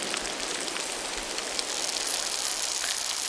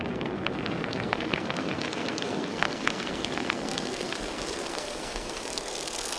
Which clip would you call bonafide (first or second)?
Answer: first